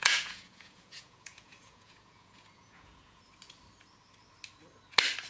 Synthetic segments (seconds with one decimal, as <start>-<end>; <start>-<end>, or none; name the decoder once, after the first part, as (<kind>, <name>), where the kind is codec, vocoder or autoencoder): 0.0-3.2 (vocoder, Vocos)